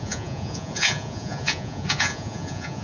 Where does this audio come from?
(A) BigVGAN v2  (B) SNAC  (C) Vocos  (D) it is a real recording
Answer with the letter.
C